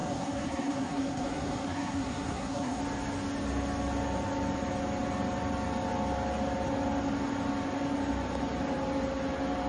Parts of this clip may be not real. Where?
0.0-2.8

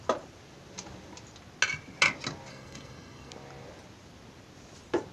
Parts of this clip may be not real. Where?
2.5-3.3

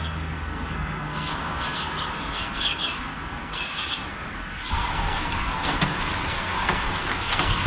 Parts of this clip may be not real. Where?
0.0-7.7

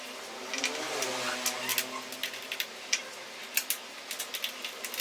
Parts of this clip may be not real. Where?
none

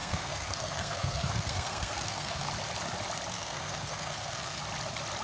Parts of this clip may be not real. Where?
0.0-2.5; 3.3-4.6

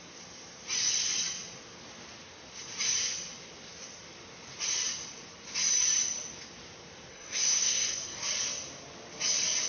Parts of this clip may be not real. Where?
7.1-8.2